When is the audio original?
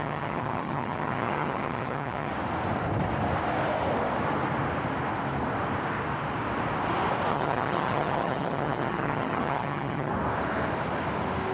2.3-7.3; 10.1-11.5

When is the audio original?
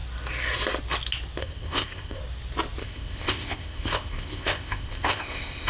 0.0-1.4; 2.2-2.8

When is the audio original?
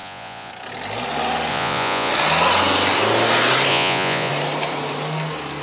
0.5-1.5; 2.1-3.7; 4.3-5.6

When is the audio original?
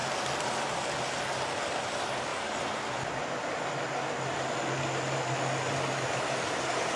0.0-7.0